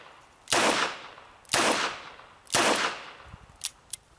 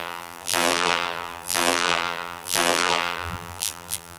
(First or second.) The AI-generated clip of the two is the second